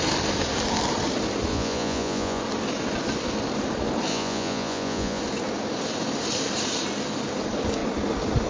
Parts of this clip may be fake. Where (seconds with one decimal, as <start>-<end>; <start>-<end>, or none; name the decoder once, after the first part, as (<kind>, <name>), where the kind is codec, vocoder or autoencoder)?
1.5-2.4 (vocoder, Vocos); 4.1-5.2